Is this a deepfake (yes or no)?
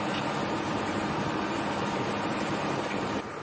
yes